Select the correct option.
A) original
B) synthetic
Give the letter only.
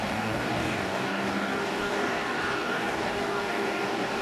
B